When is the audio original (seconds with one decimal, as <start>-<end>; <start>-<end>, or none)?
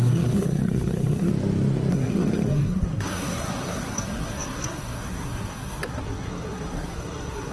1.3-1.9